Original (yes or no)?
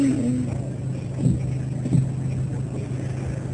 yes